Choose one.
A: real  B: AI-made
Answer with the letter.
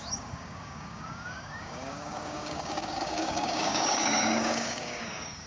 B